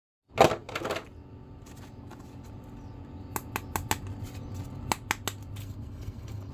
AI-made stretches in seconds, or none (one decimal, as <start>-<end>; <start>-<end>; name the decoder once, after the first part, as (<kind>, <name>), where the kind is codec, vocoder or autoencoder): 5.6-6.5 (codec, SNAC)